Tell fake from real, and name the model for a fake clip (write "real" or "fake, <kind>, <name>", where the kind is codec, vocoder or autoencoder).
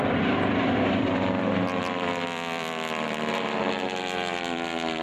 fake, vocoder, BigVGAN v2